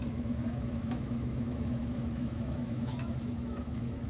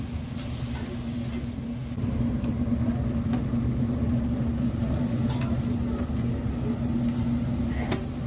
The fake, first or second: first